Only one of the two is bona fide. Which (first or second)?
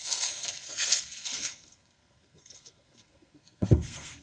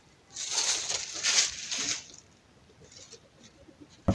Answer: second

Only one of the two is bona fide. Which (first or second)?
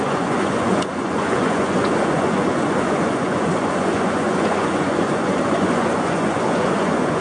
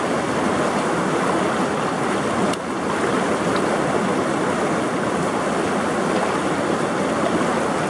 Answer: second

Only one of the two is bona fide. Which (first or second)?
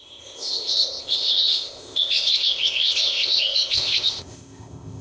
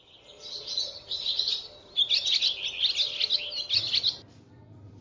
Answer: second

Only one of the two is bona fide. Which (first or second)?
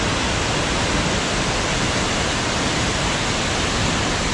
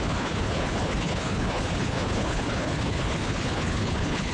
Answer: first